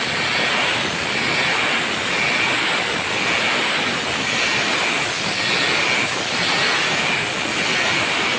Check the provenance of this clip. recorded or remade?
recorded